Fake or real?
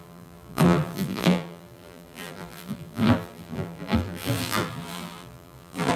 fake